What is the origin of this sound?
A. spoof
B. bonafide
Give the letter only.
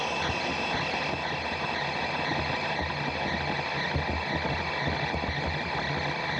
B